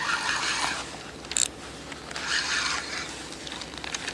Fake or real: real